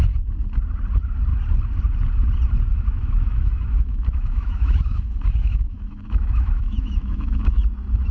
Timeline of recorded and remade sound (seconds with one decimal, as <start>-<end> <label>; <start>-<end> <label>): 0.0-2.7 recorded; 2.7-7.6 remade; 7.6-8.1 recorded